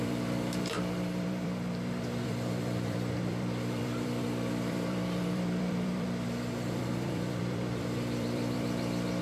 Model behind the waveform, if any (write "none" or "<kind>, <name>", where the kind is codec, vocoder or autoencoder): vocoder, BigVGAN v2